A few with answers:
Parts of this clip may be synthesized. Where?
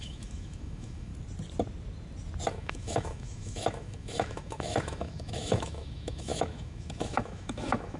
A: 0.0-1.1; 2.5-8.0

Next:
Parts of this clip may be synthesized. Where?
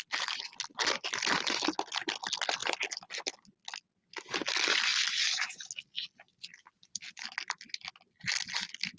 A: none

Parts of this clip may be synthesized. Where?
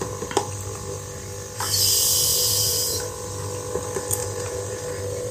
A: 2.3-3.0; 4.2-4.8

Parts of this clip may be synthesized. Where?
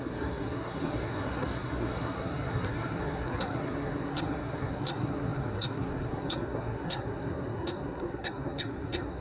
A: 0.0-9.2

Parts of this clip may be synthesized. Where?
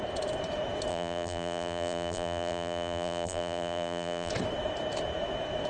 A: 0.9-4.3